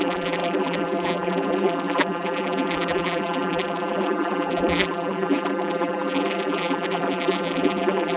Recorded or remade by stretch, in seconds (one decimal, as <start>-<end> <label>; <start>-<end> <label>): 0.0-8.2 remade